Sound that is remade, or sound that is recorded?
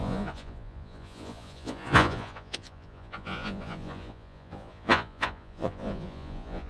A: remade